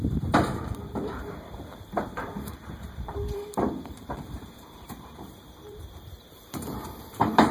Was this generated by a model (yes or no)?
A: yes